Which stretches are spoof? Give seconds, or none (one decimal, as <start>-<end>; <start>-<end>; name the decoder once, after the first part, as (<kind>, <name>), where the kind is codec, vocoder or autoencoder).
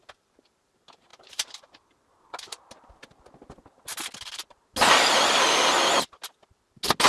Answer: none